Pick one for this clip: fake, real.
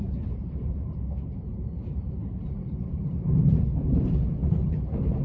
fake